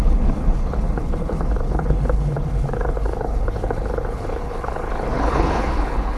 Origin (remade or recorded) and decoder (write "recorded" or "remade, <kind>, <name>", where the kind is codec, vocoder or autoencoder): remade, codec, HILCodec